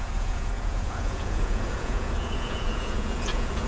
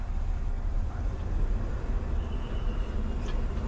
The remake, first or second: first